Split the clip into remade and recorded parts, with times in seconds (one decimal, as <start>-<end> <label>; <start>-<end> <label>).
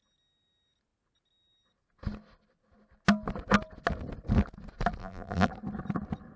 0.0-5.0 recorded; 5.0-5.5 remade; 5.5-6.4 recorded